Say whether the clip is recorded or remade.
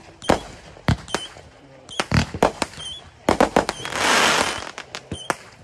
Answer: recorded